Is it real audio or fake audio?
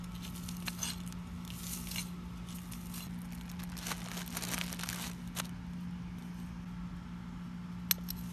real